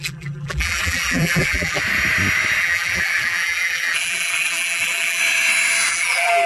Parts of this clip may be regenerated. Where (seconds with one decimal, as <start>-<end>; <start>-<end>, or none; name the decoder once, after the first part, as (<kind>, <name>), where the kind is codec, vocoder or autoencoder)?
0.0-1.8 (vocoder, BigVGAN v2); 2.6-5.2; 5.9-6.5